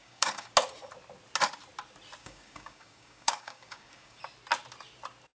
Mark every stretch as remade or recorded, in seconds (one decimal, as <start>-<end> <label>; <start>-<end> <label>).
0.0-0.5 remade; 0.5-2.2 recorded; 2.2-4.2 remade; 4.2-5.4 recorded